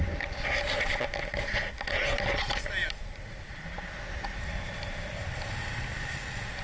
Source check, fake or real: real